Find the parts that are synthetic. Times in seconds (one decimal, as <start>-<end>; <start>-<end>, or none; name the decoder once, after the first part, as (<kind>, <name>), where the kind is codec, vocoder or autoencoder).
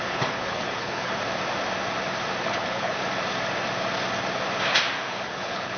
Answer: 0.0-1.1 (codec, HILCodec); 2.4-3.0; 5.0-5.8